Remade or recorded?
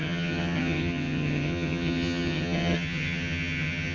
remade